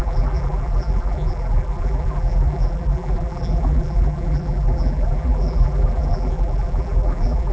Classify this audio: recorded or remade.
remade